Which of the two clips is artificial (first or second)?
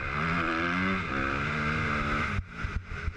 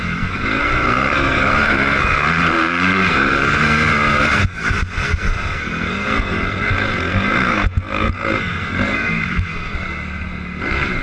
second